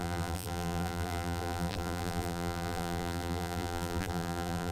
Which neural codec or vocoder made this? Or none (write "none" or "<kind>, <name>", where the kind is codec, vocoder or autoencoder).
vocoder, BigVGAN v2